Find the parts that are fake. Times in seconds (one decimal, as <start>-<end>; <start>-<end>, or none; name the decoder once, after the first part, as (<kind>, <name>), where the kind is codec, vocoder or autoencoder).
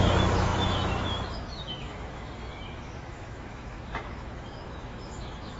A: 0.0-5.6 (autoencoder, DAC-VAE)